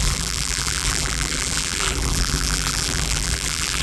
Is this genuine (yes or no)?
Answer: no